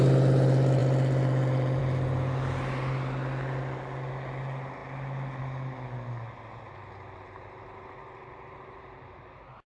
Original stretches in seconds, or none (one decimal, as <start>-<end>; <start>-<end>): 0.0-9.7